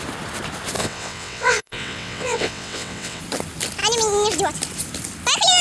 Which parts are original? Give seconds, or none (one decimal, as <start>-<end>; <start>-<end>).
0.0-0.8; 3.2-5.6